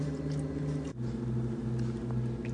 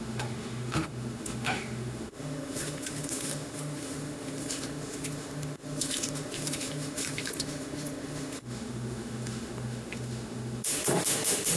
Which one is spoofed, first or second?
second